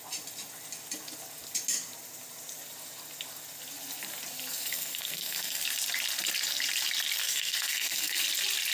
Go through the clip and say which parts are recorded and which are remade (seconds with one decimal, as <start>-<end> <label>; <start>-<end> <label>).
0.0-4.5 recorded; 4.5-5.6 remade; 5.6-7.2 recorded; 7.2-8.2 remade; 8.2-8.7 recorded